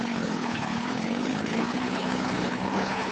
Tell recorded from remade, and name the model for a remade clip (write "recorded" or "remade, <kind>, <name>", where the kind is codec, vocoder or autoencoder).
remade, codec, HILCodec